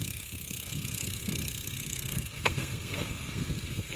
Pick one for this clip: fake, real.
fake